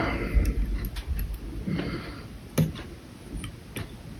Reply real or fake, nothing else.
real